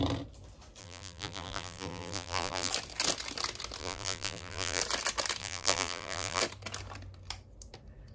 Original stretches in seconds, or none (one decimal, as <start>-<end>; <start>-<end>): 0.0-0.8; 2.7-3.8; 4.8-5.4; 6.4-8.1